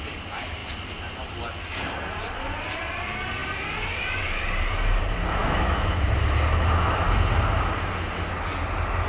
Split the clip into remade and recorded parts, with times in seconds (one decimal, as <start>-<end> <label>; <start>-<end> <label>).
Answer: 0.0-5.4 recorded; 5.4-6.0 remade; 6.0-9.1 recorded